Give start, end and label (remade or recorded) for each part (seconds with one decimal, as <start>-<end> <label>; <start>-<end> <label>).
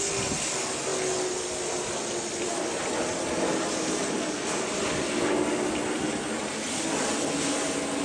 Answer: 0.0-8.0 recorded